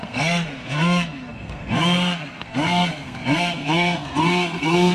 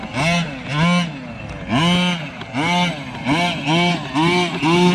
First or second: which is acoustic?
second